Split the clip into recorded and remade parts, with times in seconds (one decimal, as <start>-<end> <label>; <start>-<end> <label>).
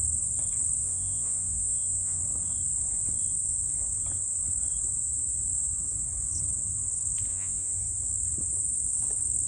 0.0-0.8 recorded; 0.8-2.2 remade; 2.2-7.3 recorded; 7.3-7.8 remade; 7.8-9.5 recorded